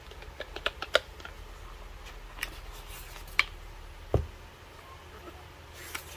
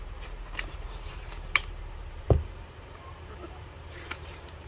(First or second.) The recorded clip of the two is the first